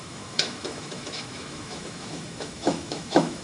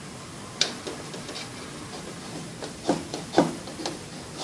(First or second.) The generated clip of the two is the first